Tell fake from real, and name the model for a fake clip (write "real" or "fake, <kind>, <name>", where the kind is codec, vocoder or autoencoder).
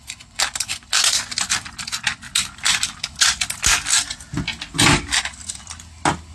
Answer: real